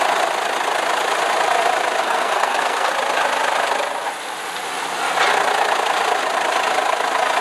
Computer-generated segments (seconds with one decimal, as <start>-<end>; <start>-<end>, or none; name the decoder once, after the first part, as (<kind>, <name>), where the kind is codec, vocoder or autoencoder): 2.0-2.9 (codec, SNAC)